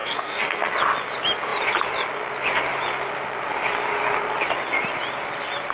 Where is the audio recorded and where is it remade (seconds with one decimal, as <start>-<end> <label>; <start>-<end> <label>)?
0.0-0.7 remade; 0.7-5.7 recorded